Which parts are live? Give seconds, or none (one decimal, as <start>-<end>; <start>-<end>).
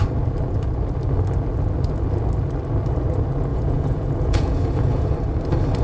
0.0-3.5; 5.1-5.8